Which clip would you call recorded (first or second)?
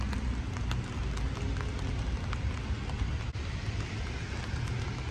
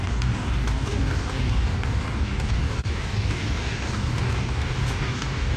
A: first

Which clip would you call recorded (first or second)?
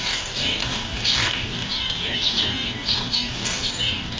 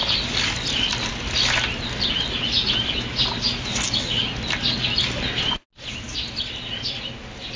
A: second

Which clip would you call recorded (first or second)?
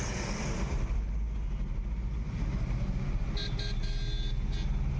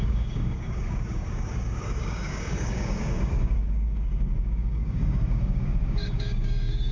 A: first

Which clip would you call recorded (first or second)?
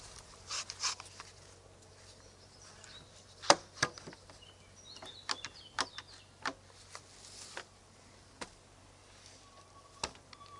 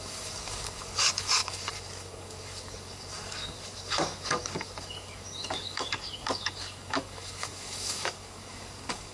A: first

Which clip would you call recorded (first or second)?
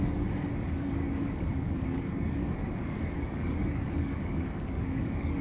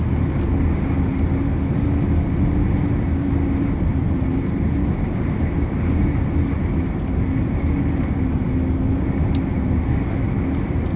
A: second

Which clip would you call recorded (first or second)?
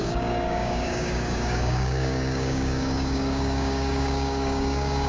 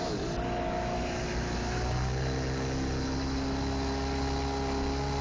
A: second